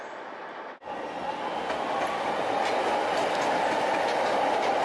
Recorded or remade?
recorded